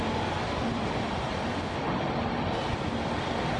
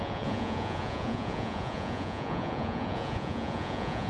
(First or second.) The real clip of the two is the first